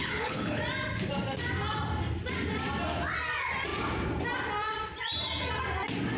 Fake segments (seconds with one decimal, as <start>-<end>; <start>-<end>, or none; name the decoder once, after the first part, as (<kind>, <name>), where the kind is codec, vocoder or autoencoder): 0.0-0.6 (codec, HILCodec)